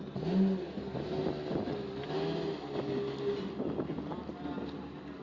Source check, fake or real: real